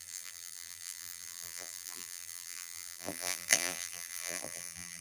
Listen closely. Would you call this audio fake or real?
fake